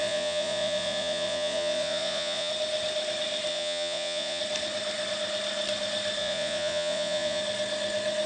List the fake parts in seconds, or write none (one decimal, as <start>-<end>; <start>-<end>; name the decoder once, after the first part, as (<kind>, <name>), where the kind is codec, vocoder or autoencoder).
0.0-2.5 (vocoder, Vocos); 3.5-4.4; 6.2-7.4